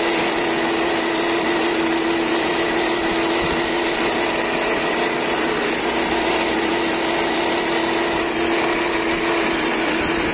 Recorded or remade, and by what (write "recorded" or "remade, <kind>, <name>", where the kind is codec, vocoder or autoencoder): recorded